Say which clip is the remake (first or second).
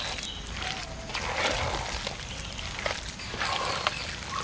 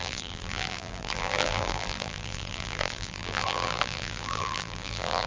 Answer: second